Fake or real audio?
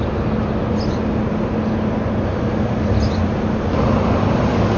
real